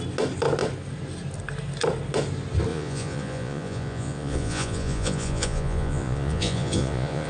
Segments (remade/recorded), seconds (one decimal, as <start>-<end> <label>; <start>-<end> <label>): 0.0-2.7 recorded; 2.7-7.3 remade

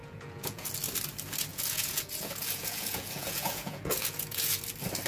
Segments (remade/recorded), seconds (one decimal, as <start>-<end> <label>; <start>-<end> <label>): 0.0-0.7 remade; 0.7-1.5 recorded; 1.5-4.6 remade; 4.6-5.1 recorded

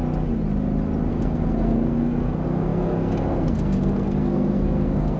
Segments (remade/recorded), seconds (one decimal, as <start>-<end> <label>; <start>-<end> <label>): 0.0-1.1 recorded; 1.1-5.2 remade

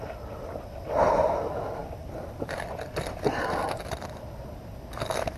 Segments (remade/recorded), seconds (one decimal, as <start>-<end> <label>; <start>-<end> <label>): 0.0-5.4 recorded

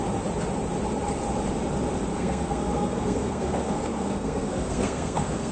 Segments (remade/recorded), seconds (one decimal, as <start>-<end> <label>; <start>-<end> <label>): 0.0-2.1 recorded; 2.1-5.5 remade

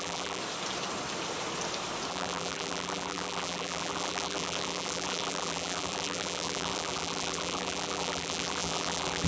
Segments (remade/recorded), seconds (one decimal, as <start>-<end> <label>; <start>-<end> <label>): 0.0-0.4 remade; 0.4-2.1 recorded; 2.1-9.3 remade

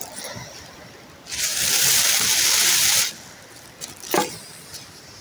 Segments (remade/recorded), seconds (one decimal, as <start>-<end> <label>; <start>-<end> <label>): 0.0-1.5 recorded; 1.5-3.4 remade; 3.4-5.2 recorded

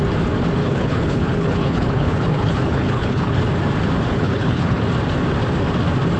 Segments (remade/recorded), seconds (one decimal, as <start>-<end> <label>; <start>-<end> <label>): 0.0-0.6 recorded; 0.6-3.4 remade; 3.4-4.1 recorded; 4.1-4.8 remade; 4.8-6.2 recorded